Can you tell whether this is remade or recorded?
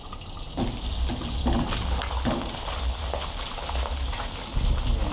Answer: recorded